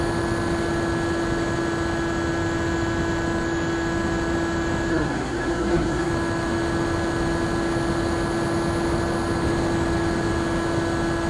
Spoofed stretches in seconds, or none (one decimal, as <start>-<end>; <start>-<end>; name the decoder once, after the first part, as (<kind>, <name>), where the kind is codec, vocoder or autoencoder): 4.9-6.1 (codec, SNAC)